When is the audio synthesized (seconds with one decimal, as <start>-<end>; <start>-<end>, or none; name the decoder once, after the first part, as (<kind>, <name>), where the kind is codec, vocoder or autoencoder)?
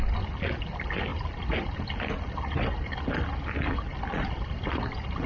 none